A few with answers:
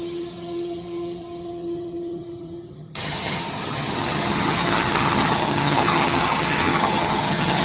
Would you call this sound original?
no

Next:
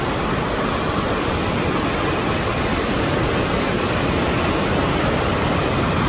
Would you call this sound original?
yes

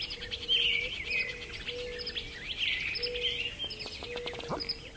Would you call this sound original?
yes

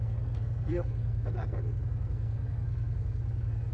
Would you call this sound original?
no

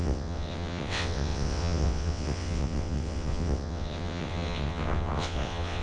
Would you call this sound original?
no